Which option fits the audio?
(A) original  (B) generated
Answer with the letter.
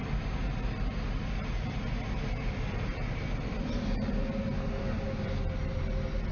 A